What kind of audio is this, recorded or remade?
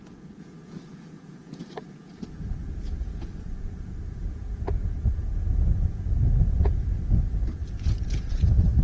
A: remade